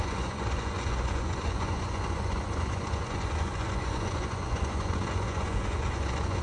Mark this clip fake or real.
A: fake